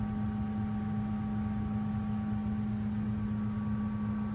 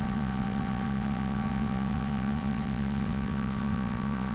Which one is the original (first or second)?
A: first